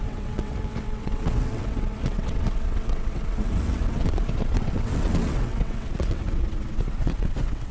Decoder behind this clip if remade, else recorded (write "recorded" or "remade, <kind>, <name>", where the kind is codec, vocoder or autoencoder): remade, vocoder, WaveNeXt